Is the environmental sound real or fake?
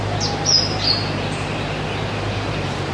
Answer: real